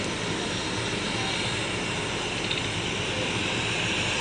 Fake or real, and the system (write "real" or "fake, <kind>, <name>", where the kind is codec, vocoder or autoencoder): real